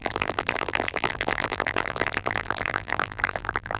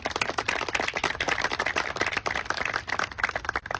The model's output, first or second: first